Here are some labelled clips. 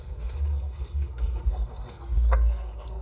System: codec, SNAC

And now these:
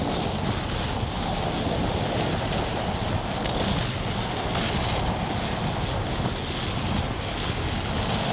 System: none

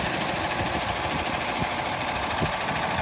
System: none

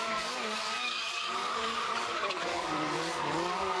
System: codec, DAC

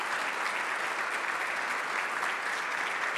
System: none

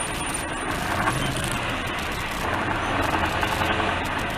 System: none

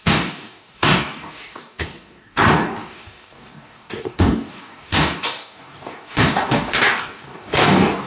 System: codec, DAC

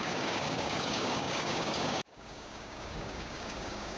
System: codec, DAC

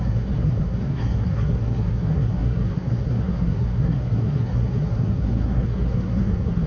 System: codec, SNAC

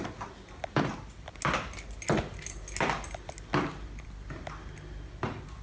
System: none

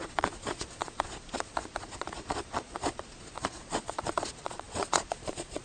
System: vocoder, Vocos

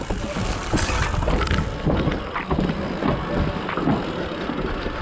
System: none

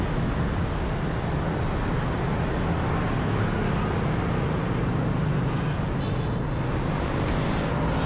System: none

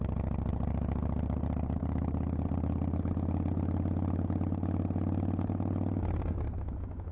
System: none